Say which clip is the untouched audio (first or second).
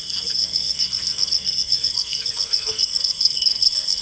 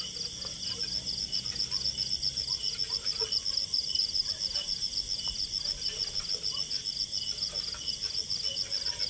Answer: second